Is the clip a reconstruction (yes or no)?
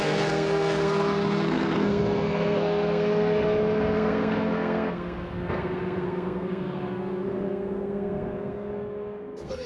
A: yes